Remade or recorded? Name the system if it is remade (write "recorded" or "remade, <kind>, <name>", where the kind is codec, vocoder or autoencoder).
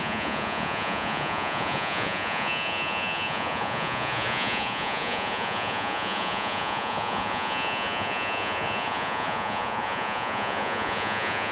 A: remade, vocoder, Vocos